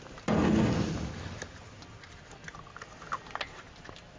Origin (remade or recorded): recorded